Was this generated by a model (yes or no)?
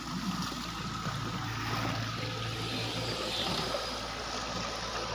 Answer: no